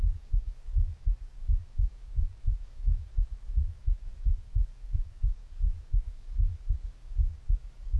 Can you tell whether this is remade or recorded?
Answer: remade